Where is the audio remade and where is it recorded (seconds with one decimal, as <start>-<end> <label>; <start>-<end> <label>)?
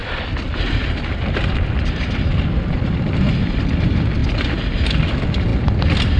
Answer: 0.0-4.2 remade; 4.2-5.1 recorded; 5.1-5.5 remade; 5.5-6.2 recorded